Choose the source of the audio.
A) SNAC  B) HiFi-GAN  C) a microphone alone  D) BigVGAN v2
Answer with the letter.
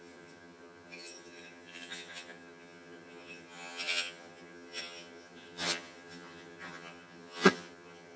B